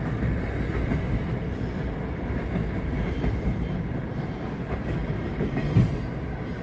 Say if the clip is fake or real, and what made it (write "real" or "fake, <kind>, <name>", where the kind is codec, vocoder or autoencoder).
real